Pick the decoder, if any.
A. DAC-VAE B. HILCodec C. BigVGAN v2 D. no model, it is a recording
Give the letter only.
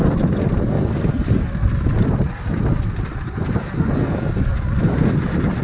D